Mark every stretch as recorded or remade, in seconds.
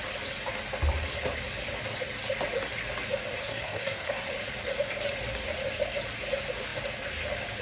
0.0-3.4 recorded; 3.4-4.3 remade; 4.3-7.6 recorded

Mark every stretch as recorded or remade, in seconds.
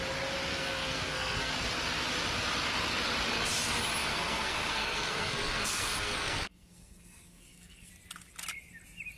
0.0-0.5 recorded; 0.5-1.5 remade; 1.5-4.0 recorded; 4.0-7.9 remade; 7.9-9.2 recorded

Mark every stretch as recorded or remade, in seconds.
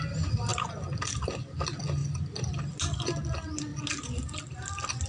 0.0-5.1 recorded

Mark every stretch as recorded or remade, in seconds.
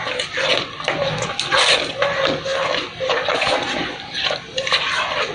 0.0-5.3 recorded